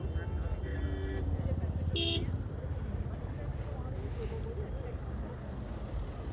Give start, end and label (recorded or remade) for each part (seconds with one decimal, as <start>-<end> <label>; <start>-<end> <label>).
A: 0.0-6.3 recorded